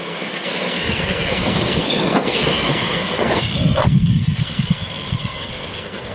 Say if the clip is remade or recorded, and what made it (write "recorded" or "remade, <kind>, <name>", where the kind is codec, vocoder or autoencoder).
remade, codec, SNAC